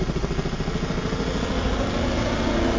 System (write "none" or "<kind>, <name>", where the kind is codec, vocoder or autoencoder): none